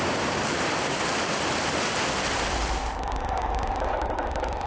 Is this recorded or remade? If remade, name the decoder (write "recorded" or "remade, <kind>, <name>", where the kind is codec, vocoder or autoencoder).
remade, vocoder, BigVGAN v2